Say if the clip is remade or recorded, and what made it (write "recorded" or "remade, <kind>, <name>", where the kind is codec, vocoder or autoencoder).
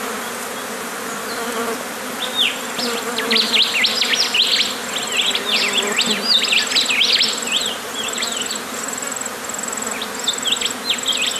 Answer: recorded